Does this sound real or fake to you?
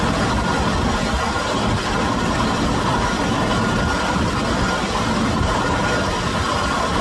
real